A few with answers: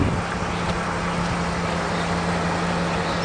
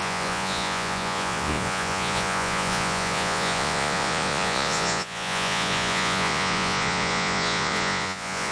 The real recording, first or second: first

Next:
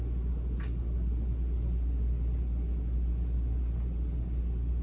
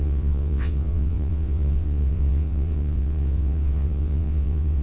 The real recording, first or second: first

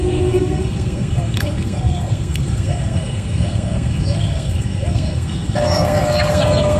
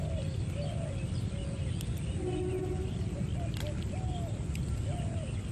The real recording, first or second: second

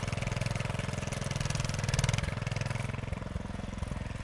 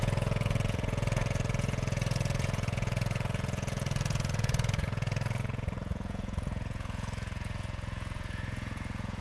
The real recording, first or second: first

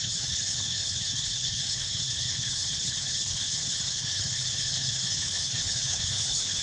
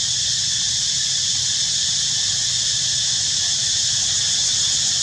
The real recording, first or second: second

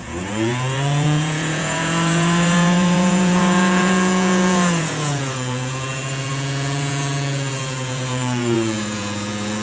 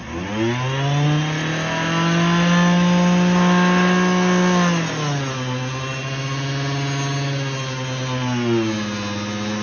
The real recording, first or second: second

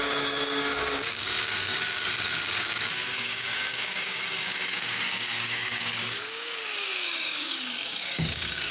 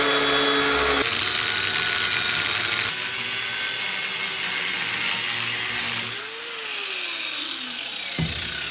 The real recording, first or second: second